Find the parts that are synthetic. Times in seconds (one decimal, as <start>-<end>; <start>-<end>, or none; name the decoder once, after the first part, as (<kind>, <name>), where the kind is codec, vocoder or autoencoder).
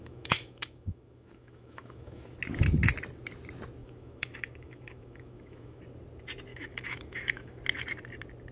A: 0.0-2.3 (autoencoder, DAC-VAE); 3.8-5.8; 6.5-7.6